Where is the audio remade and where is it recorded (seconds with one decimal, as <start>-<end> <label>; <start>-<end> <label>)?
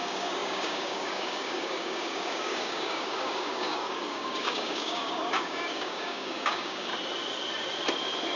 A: 0.0-6.9 remade; 6.9-8.4 recorded